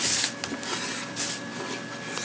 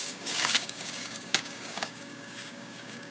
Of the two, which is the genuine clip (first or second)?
first